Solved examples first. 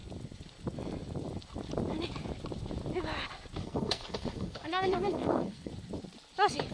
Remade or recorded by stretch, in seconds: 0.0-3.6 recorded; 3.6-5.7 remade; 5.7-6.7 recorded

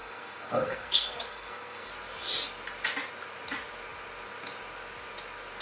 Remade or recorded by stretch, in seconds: 0.0-1.9 remade; 1.9-5.6 recorded

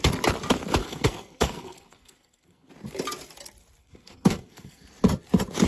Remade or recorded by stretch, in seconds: 0.0-0.8 recorded; 0.8-2.7 remade; 2.7-3.8 recorded; 3.8-4.8 remade; 4.8-5.7 recorded

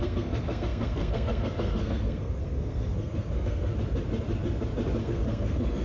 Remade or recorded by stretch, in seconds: 0.0-3.7 remade; 3.7-5.0 recorded; 5.0-5.8 remade

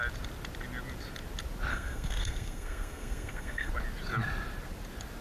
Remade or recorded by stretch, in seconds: 0.0-1.7 recorded; 1.7-3.7 remade; 3.7-5.2 recorded

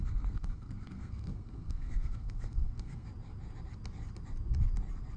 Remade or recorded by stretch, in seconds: 0.0-3.1 remade; 3.1-5.2 recorded